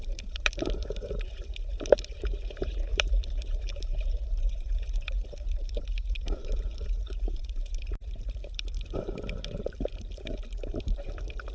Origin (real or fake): fake